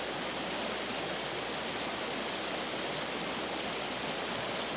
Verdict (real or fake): real